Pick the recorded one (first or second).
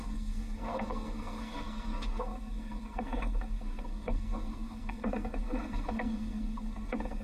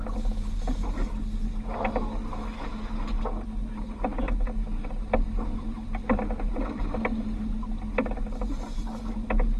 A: second